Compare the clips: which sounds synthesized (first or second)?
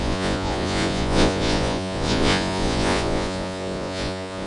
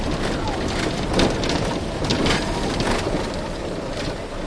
first